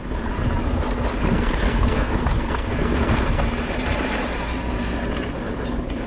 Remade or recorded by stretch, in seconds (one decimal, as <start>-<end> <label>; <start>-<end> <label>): 0.0-1.3 recorded; 1.3-3.4 remade; 3.4-6.1 recorded

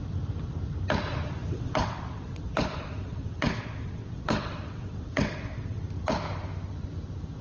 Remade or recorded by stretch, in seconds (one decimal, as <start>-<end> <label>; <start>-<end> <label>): 0.0-1.4 recorded; 1.4-5.8 remade; 5.8-7.4 recorded

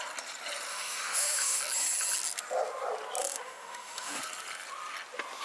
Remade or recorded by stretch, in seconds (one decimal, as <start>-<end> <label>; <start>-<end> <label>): 0.0-0.7 recorded; 0.7-1.6 remade; 1.6-3.2 recorded; 3.2-4.2 remade; 4.2-5.4 recorded

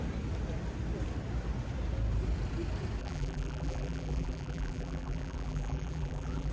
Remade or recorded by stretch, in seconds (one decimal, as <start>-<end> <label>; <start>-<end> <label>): 0.0-3.0 recorded; 3.0-6.5 remade

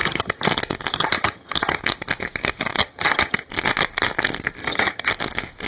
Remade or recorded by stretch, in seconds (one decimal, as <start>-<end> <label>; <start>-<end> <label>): 0.0-0.5 remade; 0.5-0.9 recorded; 0.9-1.8 remade; 1.8-2.8 recorded; 2.8-3.5 remade; 3.5-4.6 recorded; 4.6-5.1 remade; 5.1-5.7 recorded

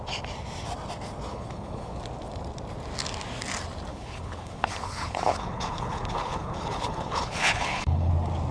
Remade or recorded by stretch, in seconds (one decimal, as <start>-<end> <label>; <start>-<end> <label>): 0.0-1.3 recorded; 1.3-2.0 remade; 2.0-3.9 recorded; 3.9-8.1 remade; 8.1-8.5 recorded

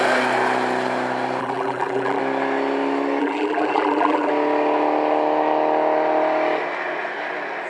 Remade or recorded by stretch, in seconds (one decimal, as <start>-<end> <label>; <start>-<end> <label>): 0.0-1.4 recorded; 1.4-2.2 remade; 2.2-3.2 recorded; 3.2-4.3 remade; 4.3-7.7 recorded